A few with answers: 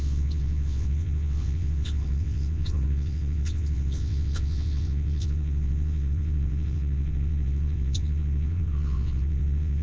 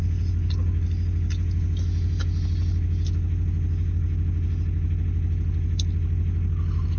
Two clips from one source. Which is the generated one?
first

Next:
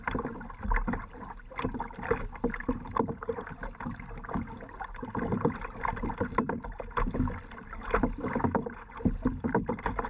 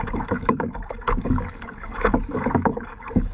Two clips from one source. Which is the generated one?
second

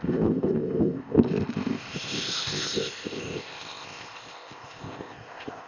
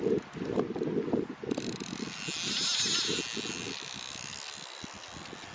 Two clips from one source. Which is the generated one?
first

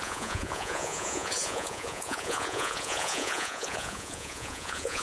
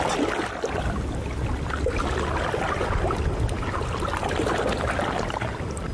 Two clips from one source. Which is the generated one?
first